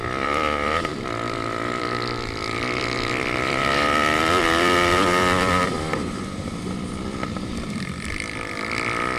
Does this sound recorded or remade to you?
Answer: remade